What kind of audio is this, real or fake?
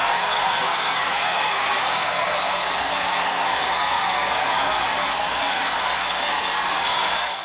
fake